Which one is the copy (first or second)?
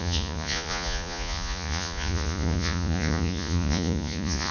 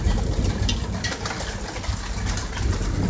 first